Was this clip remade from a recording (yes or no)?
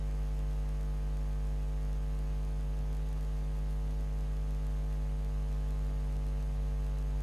no